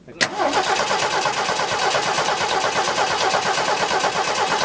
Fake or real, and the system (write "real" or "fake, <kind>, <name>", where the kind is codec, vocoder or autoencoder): real